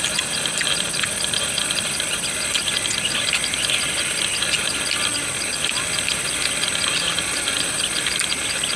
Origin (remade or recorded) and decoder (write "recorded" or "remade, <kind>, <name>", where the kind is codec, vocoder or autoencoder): recorded